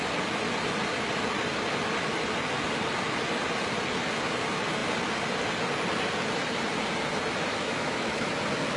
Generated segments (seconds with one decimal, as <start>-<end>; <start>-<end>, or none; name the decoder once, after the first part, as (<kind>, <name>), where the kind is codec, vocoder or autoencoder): 7.5-8.3 (autoencoder, DAC-VAE)